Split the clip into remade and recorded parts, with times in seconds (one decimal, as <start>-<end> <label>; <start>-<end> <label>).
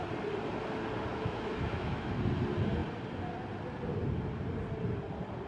0.0-1.1 recorded; 1.1-2.1 remade; 2.1-5.5 recorded